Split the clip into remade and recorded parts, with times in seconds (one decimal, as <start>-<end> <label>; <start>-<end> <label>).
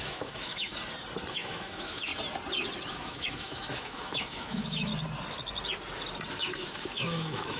0.0-0.7 remade; 0.7-1.3 recorded; 1.3-2.1 remade; 2.1-2.9 recorded; 2.9-4.9 remade; 4.9-6.3 recorded; 6.3-7.6 remade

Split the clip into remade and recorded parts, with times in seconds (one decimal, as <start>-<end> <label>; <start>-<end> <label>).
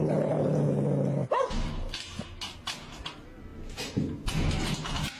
0.0-5.2 recorded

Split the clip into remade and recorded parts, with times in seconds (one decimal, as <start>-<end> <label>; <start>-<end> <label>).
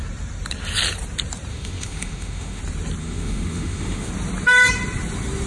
0.0-1.5 recorded; 1.5-2.6 remade; 2.6-3.0 recorded; 3.0-4.1 remade; 4.1-5.5 recorded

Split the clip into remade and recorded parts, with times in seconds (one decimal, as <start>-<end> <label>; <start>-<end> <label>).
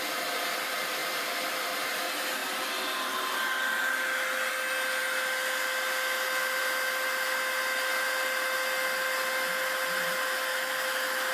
0.0-10.5 recorded; 10.5-11.3 remade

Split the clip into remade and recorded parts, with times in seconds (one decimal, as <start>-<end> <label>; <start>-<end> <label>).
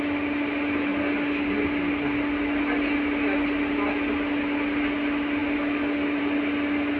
0.0-7.0 recorded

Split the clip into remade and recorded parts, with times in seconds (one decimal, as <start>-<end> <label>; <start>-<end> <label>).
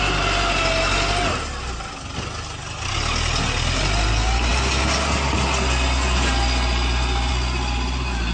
0.0-8.3 recorded